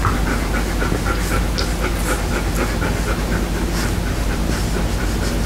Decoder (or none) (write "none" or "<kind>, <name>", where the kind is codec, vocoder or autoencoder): none